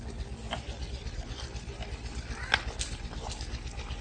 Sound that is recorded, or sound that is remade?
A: recorded